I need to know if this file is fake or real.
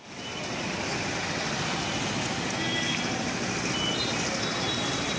real